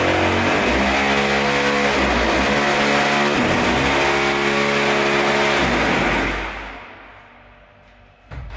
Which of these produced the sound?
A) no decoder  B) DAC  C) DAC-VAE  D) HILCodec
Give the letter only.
A